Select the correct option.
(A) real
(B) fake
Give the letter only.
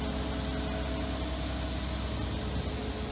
A